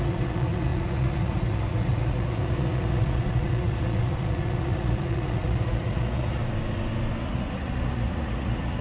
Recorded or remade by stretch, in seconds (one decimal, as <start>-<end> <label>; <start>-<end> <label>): 0.0-6.4 remade; 6.4-7.2 recorded; 7.2-8.8 remade